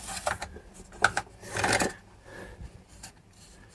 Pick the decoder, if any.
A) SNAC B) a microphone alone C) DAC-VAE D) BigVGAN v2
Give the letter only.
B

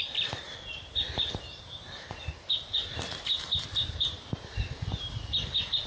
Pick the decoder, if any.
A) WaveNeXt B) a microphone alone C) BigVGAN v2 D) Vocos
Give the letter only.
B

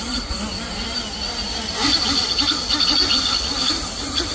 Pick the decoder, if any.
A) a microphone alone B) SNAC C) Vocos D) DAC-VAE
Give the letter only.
A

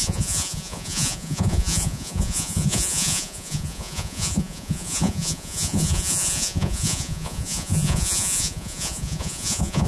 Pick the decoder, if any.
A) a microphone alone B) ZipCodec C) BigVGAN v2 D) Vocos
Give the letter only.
D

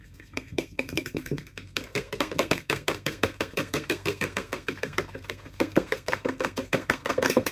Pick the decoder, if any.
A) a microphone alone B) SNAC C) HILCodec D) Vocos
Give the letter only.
B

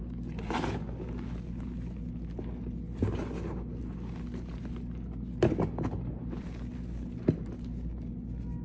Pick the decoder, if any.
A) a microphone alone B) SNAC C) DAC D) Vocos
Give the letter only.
A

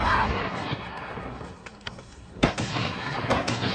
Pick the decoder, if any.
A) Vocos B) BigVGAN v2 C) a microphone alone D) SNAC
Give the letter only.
D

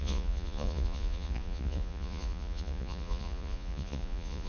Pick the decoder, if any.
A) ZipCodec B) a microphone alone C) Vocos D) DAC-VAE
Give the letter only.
C